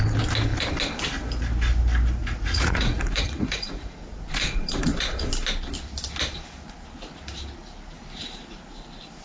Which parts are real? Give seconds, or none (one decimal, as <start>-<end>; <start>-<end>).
0.0-2.2; 5.3-9.2